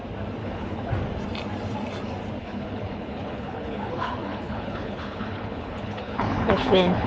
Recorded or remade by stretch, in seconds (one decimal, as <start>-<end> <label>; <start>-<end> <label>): 0.0-0.4 recorded; 0.4-0.9 remade; 0.9-2.4 recorded; 2.4-7.1 remade